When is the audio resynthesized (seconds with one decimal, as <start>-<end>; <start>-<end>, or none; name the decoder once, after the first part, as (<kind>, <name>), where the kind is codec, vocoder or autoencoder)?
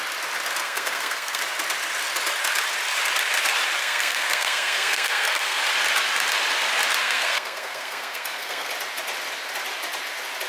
0.6-1.4 (codec, SNAC); 3.8-5.6; 7.0-8.7